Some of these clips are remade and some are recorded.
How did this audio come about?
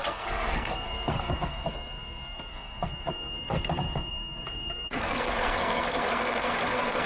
remade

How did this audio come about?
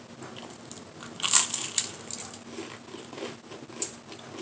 recorded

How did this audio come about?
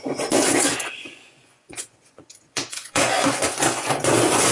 remade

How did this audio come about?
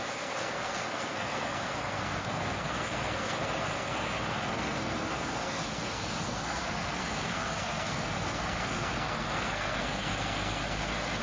remade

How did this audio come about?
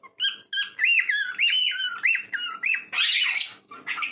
recorded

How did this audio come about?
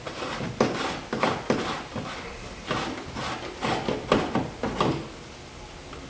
recorded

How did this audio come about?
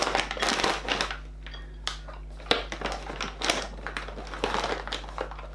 recorded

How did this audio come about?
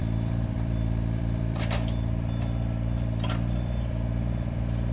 remade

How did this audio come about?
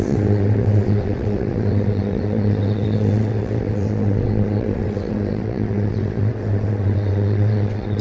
remade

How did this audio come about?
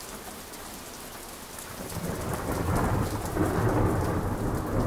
recorded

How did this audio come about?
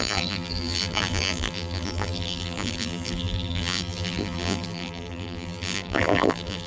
remade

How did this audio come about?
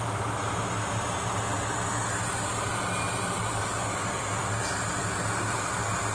recorded